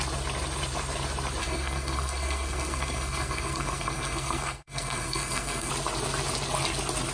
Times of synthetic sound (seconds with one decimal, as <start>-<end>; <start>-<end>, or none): 1.4-5.7